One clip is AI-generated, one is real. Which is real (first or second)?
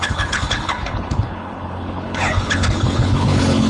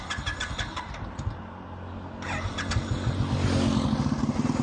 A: second